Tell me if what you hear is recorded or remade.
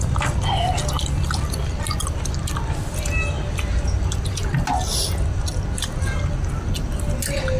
recorded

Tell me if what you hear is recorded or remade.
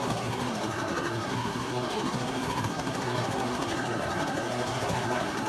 remade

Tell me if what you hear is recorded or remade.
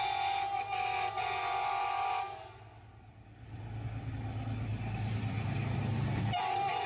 recorded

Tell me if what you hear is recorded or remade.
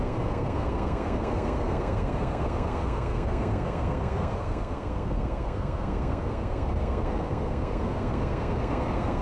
remade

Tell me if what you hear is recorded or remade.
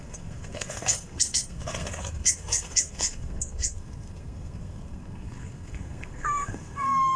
remade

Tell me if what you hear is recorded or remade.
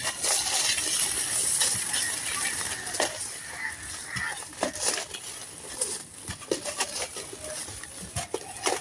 recorded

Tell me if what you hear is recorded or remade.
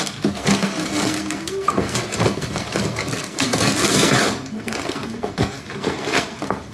remade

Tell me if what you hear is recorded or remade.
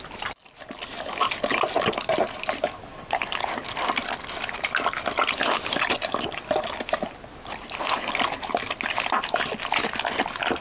recorded